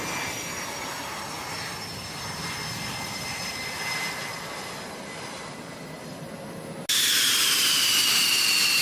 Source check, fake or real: real